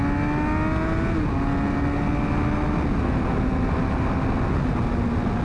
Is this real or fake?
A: real